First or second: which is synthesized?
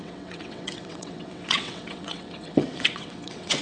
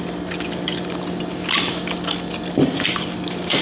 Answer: first